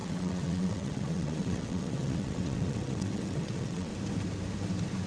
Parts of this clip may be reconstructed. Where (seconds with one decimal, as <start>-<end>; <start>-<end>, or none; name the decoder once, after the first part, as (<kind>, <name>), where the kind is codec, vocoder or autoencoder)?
0.0-3.9 (vocoder, WaveNeXt)